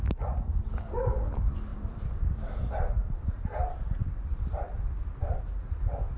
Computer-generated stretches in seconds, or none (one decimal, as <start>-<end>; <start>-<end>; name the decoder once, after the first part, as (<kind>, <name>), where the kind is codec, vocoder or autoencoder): 1.7-5.4 (vocoder, BigVGAN v2)